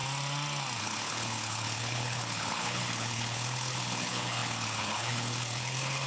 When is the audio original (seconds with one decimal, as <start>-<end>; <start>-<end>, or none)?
0.0-0.8